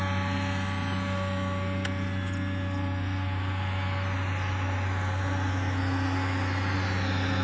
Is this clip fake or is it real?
real